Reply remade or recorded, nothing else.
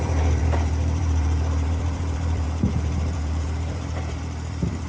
remade